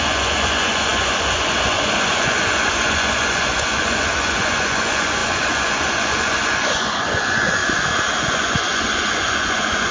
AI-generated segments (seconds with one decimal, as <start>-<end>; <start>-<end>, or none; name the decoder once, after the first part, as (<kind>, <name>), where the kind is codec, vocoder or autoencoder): 0.0-7.6 (vocoder, Vocos); 8.2-9.9